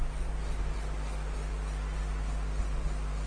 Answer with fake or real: real